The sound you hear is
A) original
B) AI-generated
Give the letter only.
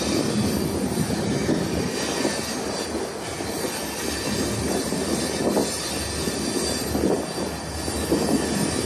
A